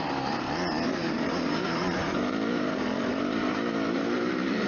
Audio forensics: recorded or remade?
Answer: remade